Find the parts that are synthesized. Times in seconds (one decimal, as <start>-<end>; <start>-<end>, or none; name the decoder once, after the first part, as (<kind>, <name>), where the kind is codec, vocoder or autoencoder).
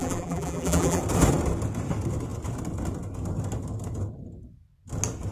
0.0-1.0 (vocoder, BigVGAN v2)